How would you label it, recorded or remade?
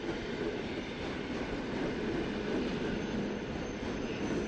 recorded